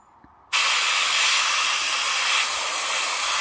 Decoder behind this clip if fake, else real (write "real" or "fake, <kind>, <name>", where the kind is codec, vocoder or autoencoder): real